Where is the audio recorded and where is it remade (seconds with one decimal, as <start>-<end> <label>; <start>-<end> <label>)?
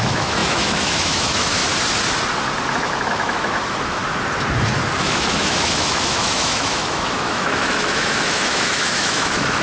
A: 0.0-1.6 remade; 1.6-3.1 recorded; 3.1-4.0 remade; 4.0-5.0 recorded; 5.0-9.6 remade